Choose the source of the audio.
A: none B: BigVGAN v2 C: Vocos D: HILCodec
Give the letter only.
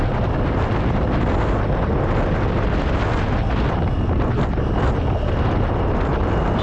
A